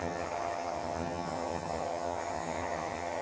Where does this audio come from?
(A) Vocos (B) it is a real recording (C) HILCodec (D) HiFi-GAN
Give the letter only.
D